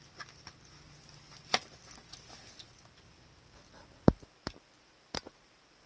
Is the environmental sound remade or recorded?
recorded